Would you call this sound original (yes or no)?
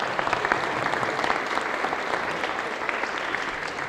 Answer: yes